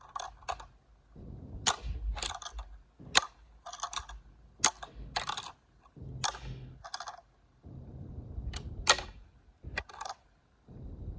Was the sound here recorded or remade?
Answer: recorded